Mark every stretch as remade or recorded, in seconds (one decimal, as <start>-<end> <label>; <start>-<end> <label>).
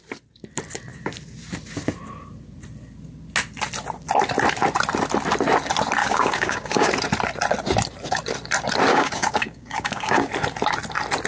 0.0-6.0 recorded; 6.0-6.9 remade; 6.9-8.9 recorded; 8.9-10.3 remade; 10.3-11.3 recorded